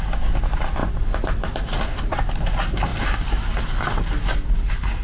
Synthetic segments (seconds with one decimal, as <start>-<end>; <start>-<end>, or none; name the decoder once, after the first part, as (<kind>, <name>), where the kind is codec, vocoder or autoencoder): none